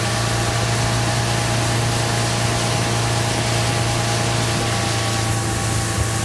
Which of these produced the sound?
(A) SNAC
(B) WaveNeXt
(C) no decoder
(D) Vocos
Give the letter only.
C